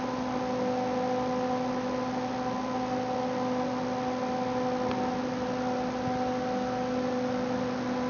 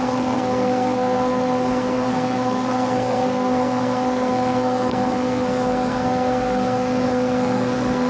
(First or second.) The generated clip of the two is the second